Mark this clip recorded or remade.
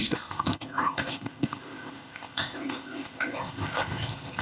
remade